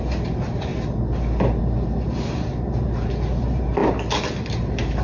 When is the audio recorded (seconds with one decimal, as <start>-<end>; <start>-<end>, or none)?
0.7-1.6; 3.8-4.5